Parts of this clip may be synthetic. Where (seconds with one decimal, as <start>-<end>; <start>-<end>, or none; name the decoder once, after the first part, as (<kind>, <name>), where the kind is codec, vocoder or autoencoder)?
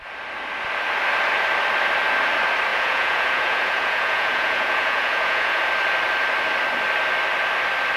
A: 2.7-5.6 (vocoder, Vocos)